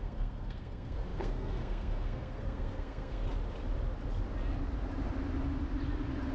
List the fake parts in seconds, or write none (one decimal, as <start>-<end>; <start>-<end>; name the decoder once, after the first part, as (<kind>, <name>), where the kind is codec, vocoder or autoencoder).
0.0-3.2 (codec, SNAC)